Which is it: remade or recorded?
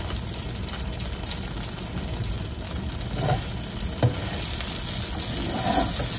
recorded